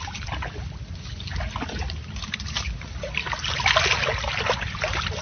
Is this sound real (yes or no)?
yes